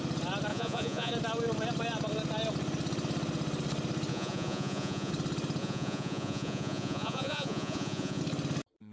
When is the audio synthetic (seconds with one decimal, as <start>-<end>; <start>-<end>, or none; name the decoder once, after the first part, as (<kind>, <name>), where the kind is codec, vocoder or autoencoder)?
0.5-1.1 (vocoder, Vocos); 4.1-5.1; 5.6-8.2